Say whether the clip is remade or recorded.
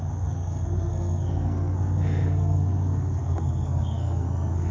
remade